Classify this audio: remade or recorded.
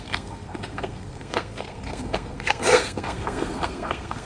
remade